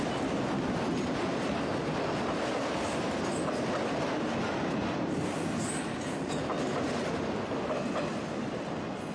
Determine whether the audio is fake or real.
real